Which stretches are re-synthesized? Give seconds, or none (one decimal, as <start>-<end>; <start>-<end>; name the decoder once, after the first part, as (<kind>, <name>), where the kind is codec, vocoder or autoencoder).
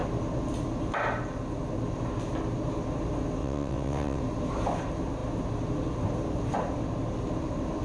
3.4-4.2 (vocoder, WaveNeXt)